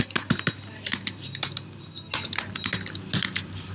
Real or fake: real